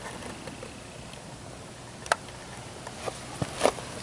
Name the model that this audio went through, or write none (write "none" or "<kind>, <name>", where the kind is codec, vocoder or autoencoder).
none